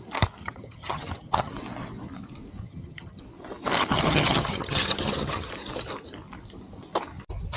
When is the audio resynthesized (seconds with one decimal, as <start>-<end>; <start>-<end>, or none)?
0.4-1.5; 2.6-3.2; 3.9-5.5